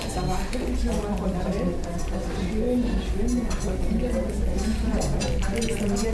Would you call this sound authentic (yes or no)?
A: yes